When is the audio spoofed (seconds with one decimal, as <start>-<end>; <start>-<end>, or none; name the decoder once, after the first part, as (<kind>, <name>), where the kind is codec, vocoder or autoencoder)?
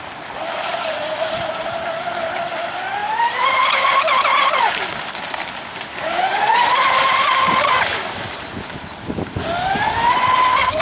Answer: 3.0-4.5 (vocoder, BigVGAN v2); 6.3-8.5